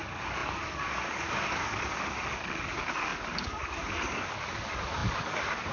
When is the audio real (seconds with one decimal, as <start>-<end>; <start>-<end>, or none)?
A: none